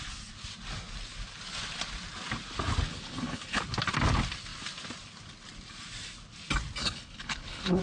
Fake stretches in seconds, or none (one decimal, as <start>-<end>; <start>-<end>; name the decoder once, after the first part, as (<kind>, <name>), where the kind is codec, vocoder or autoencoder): 2.9-3.6 (codec, HILCodec); 6.8-7.8